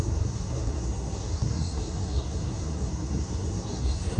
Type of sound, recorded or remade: remade